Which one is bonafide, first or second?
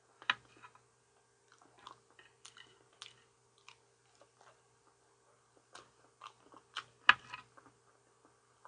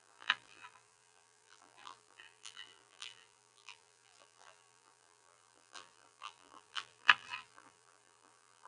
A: first